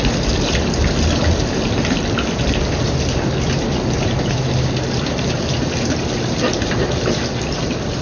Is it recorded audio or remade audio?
remade